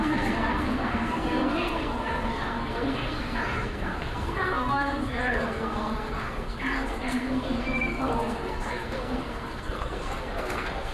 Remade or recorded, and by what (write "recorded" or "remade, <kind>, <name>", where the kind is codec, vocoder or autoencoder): remade, codec, SNAC